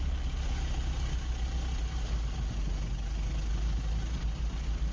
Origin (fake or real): real